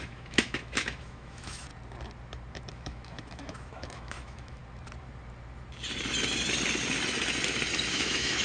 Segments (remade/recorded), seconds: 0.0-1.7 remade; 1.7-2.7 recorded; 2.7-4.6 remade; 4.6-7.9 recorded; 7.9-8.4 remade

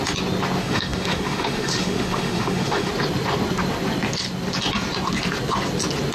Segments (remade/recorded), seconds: 0.0-0.6 recorded; 0.6-2.9 remade; 2.9-6.1 recorded

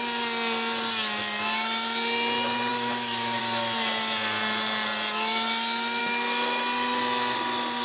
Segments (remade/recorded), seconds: 0.0-2.7 recorded; 2.7-3.4 remade; 3.4-6.0 recorded; 6.0-6.6 remade; 6.6-7.8 recorded